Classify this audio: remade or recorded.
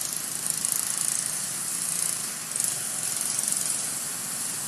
recorded